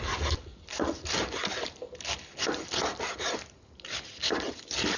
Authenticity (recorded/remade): recorded